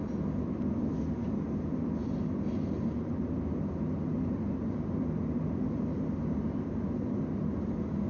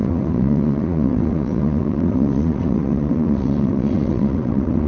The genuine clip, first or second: first